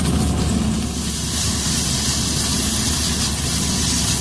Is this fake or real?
real